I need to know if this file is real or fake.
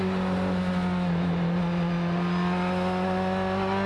real